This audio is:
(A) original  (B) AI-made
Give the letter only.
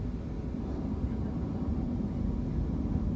A